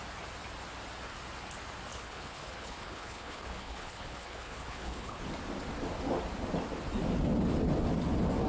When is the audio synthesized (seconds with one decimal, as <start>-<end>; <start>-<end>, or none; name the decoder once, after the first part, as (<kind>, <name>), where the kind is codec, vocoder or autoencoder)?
1.9-5.2 (codec, HILCodec)